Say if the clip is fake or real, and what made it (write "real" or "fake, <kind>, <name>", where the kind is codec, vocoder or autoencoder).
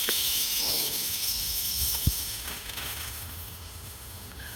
fake, autoencoder, DAC-VAE